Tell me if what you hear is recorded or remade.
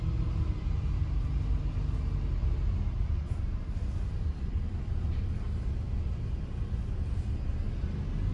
recorded